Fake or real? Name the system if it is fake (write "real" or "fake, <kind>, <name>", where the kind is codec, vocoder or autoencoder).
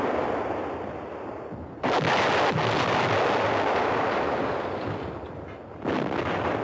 real